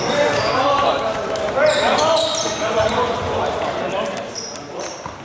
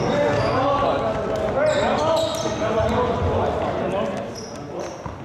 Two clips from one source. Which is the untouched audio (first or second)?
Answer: second